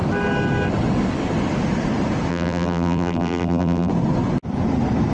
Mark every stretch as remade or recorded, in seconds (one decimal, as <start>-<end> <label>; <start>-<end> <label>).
0.0-2.3 recorded; 2.3-3.9 remade; 3.9-5.1 recorded